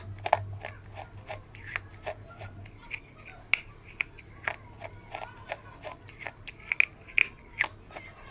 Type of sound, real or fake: real